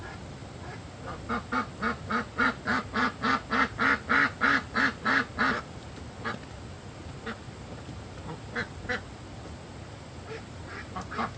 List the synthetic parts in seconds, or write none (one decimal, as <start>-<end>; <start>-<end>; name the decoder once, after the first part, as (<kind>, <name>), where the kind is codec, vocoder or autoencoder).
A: none